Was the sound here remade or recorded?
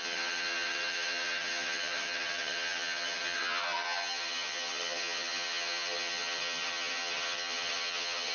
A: remade